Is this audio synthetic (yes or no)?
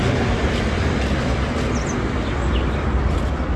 no